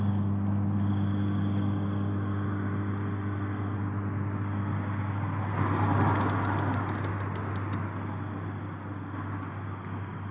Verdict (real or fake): real